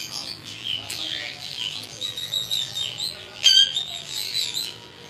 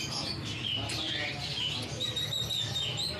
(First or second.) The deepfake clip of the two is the first